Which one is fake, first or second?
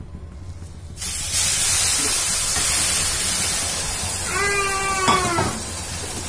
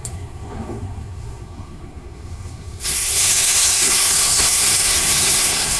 second